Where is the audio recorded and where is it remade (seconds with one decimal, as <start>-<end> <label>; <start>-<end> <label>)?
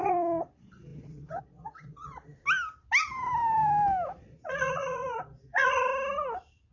0.0-2.3 remade; 2.3-4.2 recorded; 4.2-5.9 remade; 5.9-6.7 recorded